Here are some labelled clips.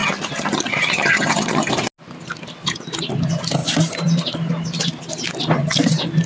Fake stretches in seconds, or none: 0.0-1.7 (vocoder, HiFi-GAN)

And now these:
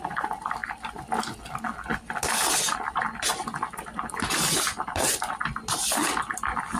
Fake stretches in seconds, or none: none

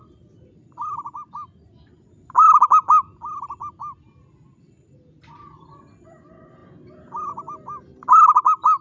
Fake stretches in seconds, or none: none

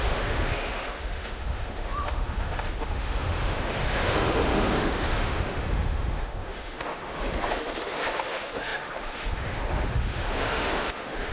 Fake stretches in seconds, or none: 0.0-11.3 (autoencoder, DAC-VAE)

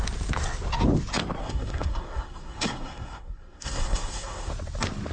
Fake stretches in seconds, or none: 1.4-4.5 (codec, SNAC)

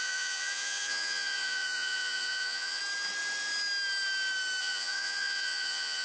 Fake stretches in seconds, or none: 0.0-2.8 (vocoder, Vocos); 4.6-6.0